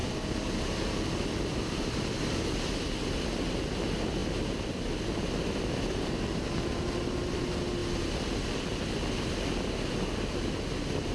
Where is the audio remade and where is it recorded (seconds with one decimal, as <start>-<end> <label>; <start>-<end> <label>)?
0.0-11.1 recorded

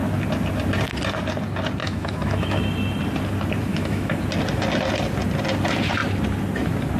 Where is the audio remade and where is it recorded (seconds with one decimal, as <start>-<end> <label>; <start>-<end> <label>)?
0.0-1.8 recorded; 1.8-2.6 remade; 2.6-3.7 recorded; 3.7-4.2 remade; 4.2-7.0 recorded